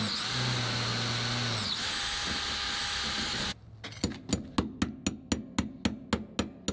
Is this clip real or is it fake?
real